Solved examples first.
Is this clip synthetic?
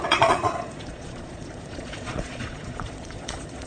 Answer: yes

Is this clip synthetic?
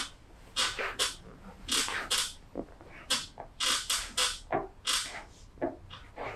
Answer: no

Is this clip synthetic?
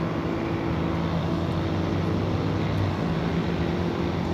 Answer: no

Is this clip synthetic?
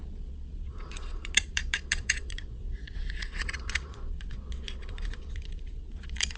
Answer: yes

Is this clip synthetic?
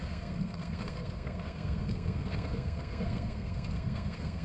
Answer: yes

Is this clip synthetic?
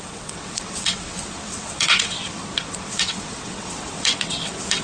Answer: yes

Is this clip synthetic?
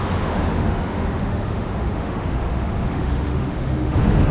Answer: yes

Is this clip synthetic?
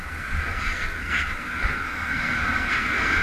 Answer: yes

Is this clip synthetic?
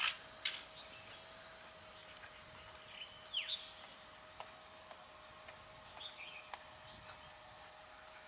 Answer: no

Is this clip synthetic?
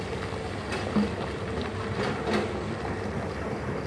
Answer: no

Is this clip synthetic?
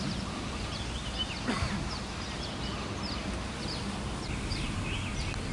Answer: no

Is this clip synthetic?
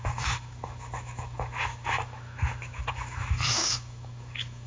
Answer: yes